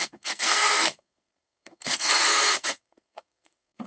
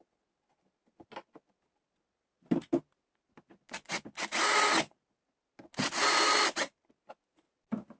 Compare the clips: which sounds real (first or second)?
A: second